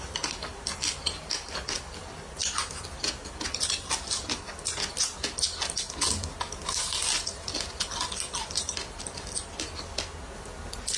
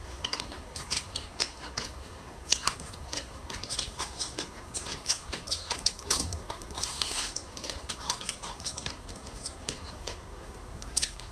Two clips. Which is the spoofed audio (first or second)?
second